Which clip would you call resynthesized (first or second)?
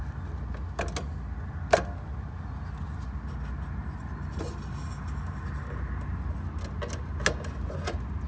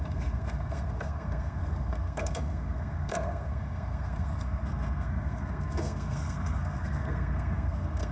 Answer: second